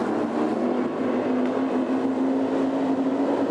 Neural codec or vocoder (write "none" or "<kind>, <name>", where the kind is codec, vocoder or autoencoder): none